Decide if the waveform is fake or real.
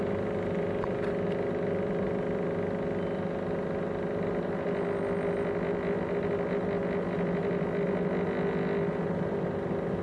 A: real